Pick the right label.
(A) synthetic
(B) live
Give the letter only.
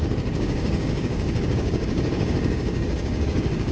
A